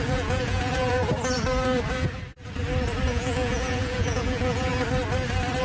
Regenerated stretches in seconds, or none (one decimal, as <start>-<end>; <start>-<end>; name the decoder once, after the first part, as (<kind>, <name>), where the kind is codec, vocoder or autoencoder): 0.0-1.0 (vocoder, Vocos); 3.1-4.7